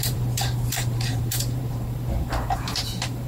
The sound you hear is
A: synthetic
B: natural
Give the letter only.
A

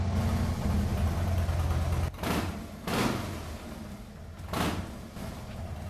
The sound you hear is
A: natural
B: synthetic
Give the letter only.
A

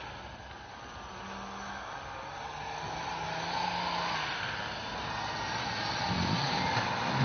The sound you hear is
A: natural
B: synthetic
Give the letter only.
A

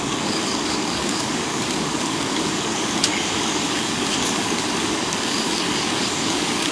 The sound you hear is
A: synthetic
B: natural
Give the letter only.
A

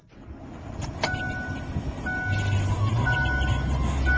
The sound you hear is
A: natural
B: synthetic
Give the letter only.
A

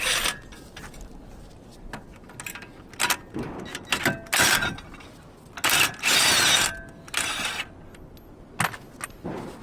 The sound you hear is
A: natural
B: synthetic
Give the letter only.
A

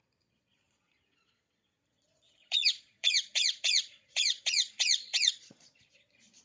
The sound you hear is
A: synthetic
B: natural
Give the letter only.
A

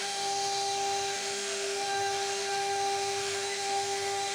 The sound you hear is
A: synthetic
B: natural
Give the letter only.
A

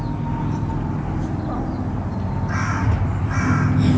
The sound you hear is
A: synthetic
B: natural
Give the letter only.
B